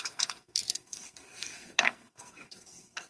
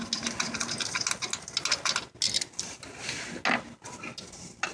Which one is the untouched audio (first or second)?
second